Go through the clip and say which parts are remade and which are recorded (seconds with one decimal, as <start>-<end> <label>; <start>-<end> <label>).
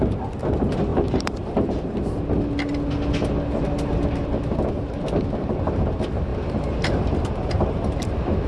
0.0-0.9 recorded; 0.9-1.9 remade; 1.9-6.3 recorded; 6.3-8.5 remade